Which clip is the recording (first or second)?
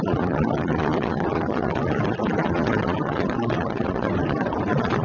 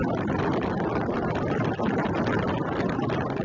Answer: second